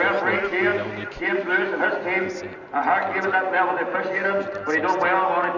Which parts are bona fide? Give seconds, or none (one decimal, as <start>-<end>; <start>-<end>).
0.0-0.7; 1.8-5.6